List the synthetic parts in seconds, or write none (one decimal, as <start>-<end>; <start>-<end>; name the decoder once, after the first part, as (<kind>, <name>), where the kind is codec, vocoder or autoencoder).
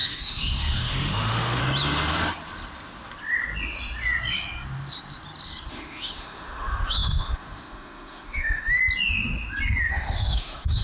0.0-1.6 (autoencoder, DAC-VAE); 5.7-8.8; 9.9-10.8